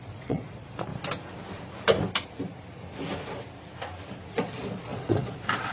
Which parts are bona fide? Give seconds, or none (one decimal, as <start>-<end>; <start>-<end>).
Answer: 0.9-4.3